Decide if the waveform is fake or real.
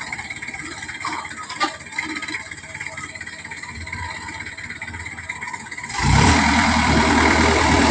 fake